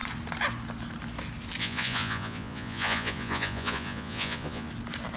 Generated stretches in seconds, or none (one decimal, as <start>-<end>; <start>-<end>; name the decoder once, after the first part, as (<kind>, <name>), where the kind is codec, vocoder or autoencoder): 1.6-4.7 (vocoder, Vocos)